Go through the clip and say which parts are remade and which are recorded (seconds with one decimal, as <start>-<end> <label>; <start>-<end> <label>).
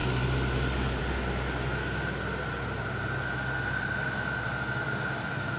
0.0-5.6 recorded